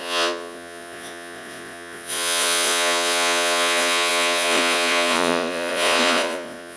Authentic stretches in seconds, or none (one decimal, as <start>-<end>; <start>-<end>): none